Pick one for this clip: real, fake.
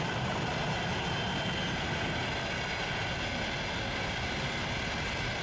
real